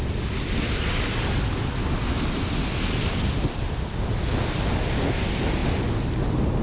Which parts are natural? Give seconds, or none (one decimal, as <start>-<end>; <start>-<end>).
0.0-6.6

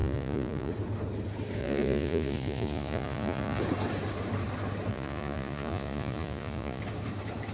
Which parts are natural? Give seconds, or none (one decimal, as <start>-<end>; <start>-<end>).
0.7-1.6; 3.6-4.9; 6.8-7.5